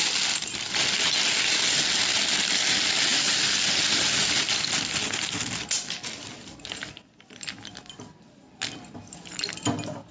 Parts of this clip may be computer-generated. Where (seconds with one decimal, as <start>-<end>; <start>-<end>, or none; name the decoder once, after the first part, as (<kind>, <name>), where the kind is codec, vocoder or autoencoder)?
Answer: none